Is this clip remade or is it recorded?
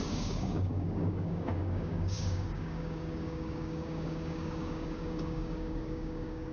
remade